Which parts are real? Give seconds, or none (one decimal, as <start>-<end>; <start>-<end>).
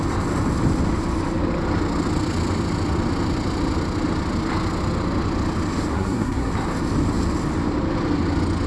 0.0-5.9; 6.5-8.7